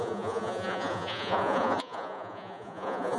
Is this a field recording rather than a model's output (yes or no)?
no